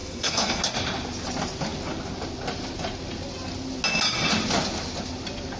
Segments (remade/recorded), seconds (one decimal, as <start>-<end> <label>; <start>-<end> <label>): 0.0-0.6 remade; 0.6-5.6 recorded